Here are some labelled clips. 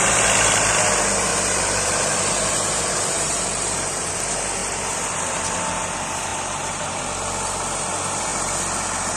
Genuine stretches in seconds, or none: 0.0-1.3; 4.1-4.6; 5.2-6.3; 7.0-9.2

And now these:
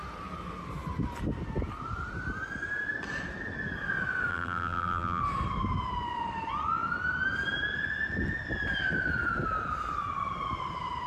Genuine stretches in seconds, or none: 0.0-4.3; 5.2-11.1

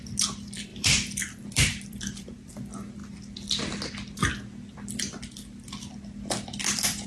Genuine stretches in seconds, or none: 0.0-0.7; 2.5-7.1

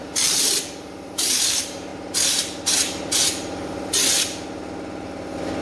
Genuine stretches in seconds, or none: 1.9-5.6

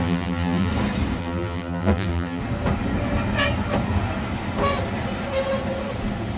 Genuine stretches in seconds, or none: 0.7-1.2; 2.4-6.4

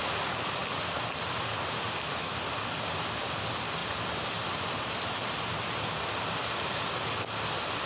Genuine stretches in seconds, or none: 0.0-3.8; 5.5-7.9